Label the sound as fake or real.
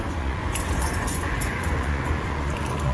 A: fake